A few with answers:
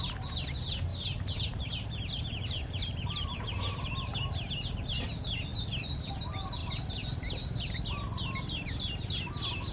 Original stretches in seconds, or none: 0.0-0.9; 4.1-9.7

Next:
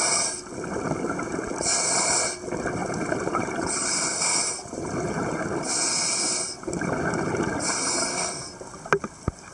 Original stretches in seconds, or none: 0.0-2.8; 5.4-9.5